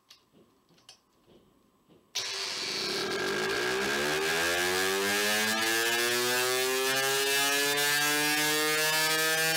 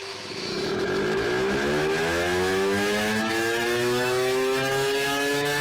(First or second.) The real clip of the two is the first